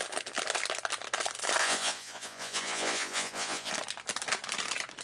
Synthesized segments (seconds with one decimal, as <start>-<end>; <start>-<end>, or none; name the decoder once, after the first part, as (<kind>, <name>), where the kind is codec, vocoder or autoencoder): 1.6-3.7 (vocoder, Vocos)